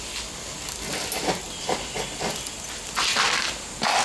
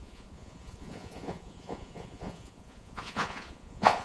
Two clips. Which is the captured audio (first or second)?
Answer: first